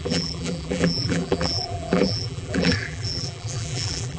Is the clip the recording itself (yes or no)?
no